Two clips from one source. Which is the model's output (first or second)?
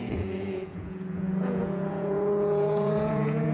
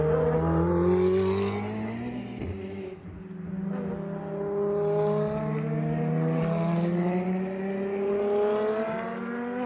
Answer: first